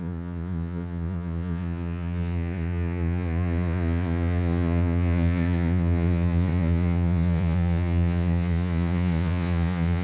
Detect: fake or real fake